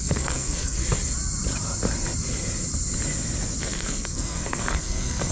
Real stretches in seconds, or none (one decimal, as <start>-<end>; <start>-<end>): 0.8-3.6